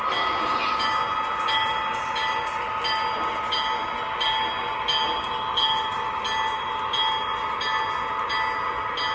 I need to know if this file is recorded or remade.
recorded